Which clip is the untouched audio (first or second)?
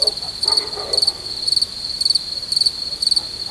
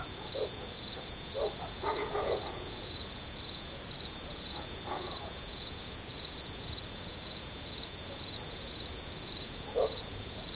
first